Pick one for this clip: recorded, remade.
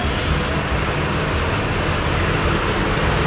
recorded